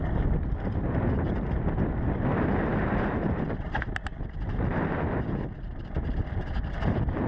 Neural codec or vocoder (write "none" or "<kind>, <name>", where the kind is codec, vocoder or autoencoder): none